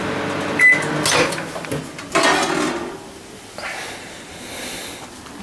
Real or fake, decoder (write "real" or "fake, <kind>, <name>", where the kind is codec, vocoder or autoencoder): real